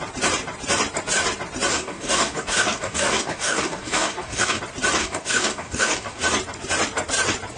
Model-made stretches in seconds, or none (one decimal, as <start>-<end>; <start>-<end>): 1.7-4.6; 5.0-6.2